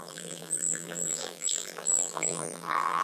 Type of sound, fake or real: fake